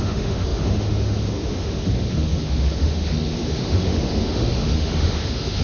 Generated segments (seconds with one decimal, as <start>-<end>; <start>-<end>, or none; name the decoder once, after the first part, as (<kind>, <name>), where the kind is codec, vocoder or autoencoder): 0.0-5.6 (autoencoder, DAC-VAE)